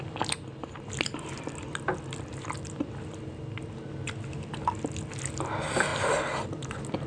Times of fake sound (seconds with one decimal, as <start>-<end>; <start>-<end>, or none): none

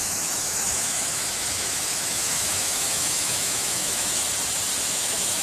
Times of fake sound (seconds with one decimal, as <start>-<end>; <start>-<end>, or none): 0.0-4.2; 4.9-5.4

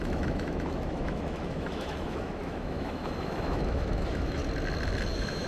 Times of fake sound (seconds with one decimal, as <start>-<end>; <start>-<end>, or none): 0.0-4.4; 5.1-5.5

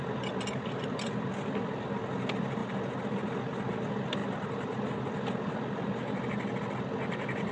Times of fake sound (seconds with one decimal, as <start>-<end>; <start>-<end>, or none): none

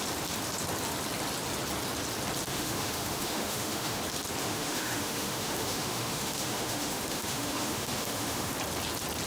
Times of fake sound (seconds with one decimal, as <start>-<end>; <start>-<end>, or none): 2.5-4.0; 4.4-8.5

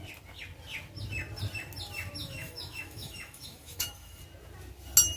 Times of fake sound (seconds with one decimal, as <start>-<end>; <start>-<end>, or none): 2.2-4.2

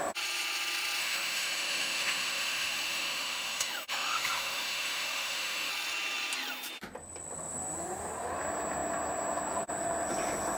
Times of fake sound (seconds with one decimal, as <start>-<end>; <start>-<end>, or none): 1.0-5.7